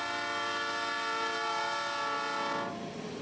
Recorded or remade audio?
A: recorded